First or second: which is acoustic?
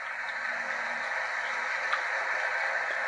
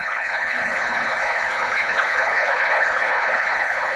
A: first